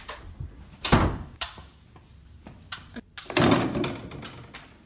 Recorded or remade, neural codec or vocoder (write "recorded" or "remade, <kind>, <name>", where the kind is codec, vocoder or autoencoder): recorded